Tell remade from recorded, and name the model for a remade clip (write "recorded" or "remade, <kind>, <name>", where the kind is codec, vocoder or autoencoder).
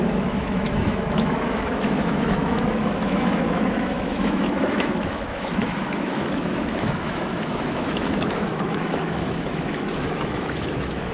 remade, autoencoder, DAC-VAE